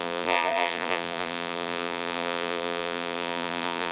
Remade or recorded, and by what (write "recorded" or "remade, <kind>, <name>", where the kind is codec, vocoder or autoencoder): remade, vocoder, BigVGAN v2